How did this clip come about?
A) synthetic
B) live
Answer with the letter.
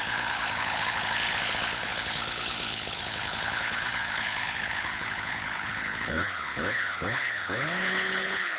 A